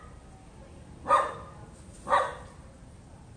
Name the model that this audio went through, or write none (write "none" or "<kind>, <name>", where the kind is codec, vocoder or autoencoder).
none